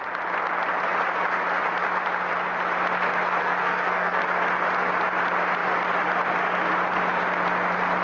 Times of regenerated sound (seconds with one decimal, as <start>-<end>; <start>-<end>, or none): 3.4-4.2